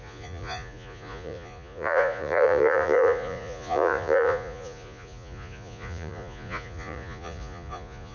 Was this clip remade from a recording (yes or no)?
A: yes